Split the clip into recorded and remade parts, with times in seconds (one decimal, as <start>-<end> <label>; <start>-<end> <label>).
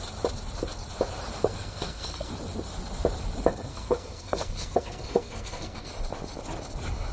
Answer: 0.0-1.4 recorded; 1.4-2.3 remade; 2.3-3.7 recorded; 3.7-5.9 remade; 5.9-7.1 recorded